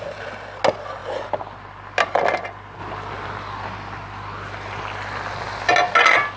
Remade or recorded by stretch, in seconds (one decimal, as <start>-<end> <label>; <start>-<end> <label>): 0.0-6.4 recorded